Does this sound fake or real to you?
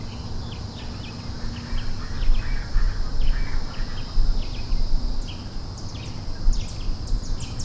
real